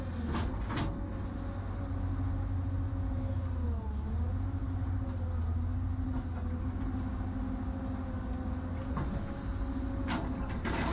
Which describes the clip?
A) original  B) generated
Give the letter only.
A